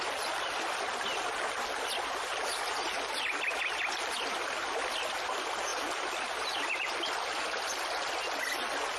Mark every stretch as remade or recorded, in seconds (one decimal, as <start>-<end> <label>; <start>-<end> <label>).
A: 0.0-2.3 recorded; 2.3-3.6 remade; 3.6-5.7 recorded; 5.7-6.9 remade; 6.9-9.0 recorded